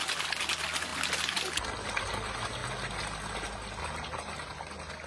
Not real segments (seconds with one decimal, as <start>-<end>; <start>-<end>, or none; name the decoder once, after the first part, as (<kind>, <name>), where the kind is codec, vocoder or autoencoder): none

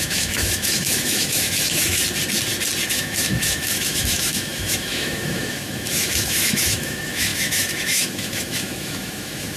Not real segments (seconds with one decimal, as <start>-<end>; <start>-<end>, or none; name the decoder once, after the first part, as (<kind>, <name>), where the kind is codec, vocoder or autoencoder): 0.0-2.0 (autoencoder, DAC-VAE); 2.9-9.6

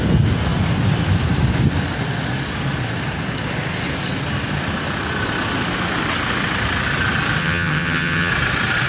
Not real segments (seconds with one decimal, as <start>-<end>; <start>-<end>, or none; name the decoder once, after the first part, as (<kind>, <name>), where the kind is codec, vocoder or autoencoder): 7.4-8.3 (vocoder, HiFi-GAN)

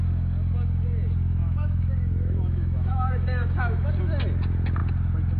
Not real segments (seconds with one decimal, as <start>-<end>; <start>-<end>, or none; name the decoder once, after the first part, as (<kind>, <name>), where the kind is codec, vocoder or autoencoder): 1.4-3.9 (autoencoder, DAC-VAE)

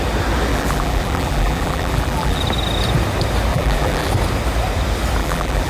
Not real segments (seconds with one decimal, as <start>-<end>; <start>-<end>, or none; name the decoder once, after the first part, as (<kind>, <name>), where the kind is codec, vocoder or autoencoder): 0.5-2.4 (vocoder, BigVGAN v2); 3.5-4.1; 5.2-5.7

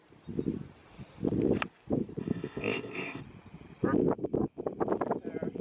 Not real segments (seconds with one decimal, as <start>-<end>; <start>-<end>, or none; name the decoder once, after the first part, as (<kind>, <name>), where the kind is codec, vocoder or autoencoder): 2.2-3.2 (codec, ZipCodec)

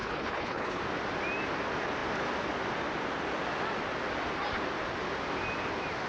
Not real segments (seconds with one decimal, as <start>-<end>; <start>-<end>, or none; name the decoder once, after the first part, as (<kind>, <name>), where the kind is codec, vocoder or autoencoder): 0.0-0.8 (codec, HILCodec)